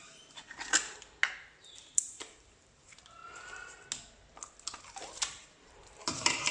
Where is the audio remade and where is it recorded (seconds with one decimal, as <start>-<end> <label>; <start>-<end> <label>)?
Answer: 0.0-0.4 remade; 0.4-1.4 recorded; 1.4-3.2 remade; 3.2-4.8 recorded; 4.8-6.5 remade